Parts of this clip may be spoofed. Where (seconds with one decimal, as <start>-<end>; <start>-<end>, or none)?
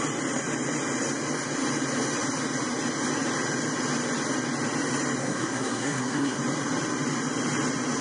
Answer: 5.2-6.4